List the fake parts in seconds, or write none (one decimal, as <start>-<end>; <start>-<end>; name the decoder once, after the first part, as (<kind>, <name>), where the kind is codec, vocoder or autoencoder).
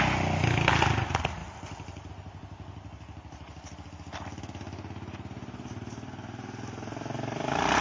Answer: none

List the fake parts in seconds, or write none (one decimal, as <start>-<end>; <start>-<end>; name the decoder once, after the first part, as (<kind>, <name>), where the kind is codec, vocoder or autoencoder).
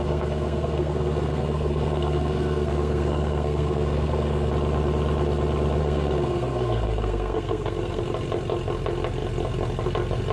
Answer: 0.0-4.5 (codec, SNAC); 5.8-8.0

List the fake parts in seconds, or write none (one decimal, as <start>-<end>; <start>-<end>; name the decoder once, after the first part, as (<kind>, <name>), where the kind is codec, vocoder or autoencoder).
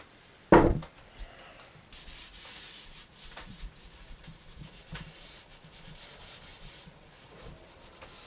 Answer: 2.2-6.0 (vocoder, Vocos); 6.5-7.5